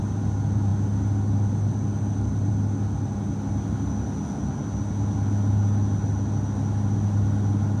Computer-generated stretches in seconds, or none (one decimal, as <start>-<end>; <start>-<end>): none